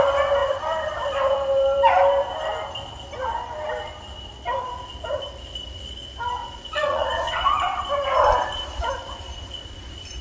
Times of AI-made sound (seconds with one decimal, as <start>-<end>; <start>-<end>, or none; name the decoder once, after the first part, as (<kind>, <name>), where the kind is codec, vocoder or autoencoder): 6.4-7.3 (vocoder, Vocos)